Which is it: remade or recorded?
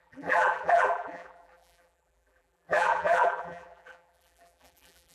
remade